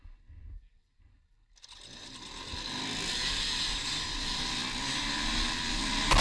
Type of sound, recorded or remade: recorded